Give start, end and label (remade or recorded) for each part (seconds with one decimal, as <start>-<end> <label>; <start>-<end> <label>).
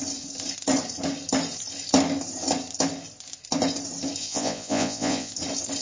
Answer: 0.0-4.2 recorded; 4.2-5.3 remade; 5.3-5.8 recorded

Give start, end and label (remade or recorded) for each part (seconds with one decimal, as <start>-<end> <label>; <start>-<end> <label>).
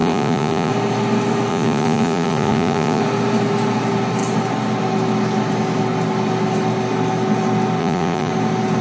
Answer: 0.0-0.7 remade; 0.7-1.5 recorded; 1.5-3.0 remade; 3.0-7.8 recorded; 7.8-8.3 remade; 8.3-8.8 recorded